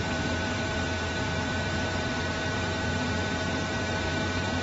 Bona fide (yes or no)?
no